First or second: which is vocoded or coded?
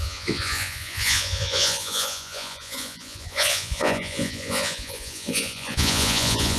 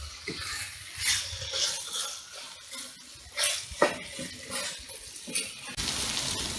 first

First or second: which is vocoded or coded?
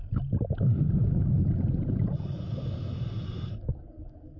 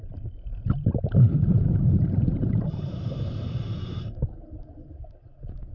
second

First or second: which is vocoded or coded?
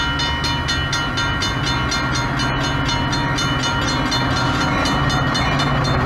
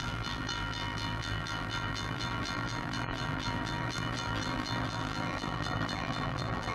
second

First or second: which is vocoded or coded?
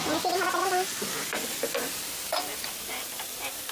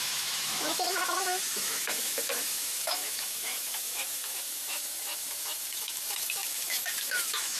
second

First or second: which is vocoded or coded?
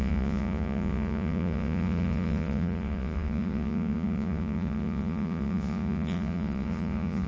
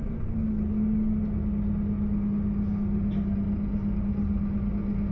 first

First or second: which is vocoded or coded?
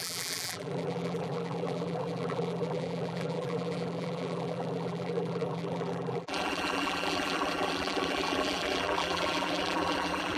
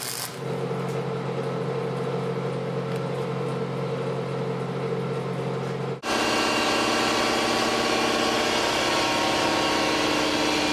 first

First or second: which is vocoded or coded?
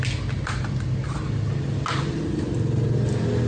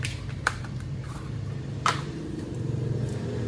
second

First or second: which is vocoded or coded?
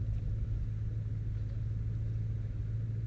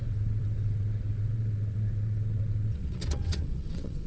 second